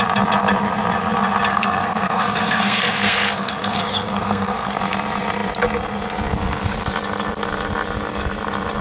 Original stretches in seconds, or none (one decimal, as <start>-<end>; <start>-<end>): 0.0-1.5; 4.8-8.8